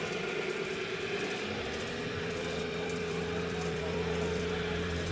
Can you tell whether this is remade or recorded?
remade